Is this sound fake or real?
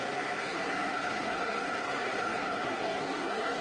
fake